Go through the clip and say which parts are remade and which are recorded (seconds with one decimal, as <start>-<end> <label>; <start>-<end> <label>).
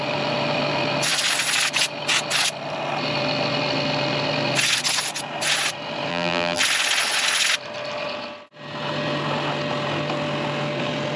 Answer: 0.0-6.1 recorded; 6.1-6.6 remade; 6.6-11.2 recorded